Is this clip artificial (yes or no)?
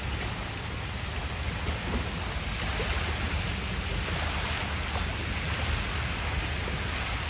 no